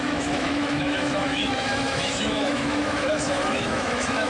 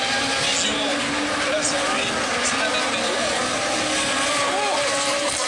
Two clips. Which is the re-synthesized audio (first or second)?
first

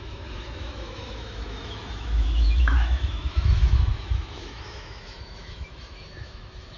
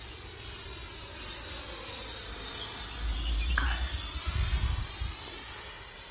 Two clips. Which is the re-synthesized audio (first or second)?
first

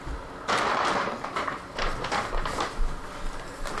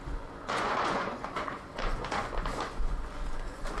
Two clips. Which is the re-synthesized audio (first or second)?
second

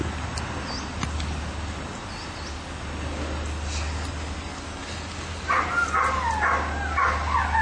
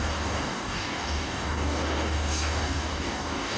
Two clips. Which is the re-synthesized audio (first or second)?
second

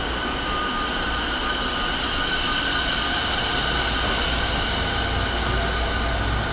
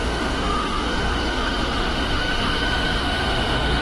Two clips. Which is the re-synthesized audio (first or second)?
second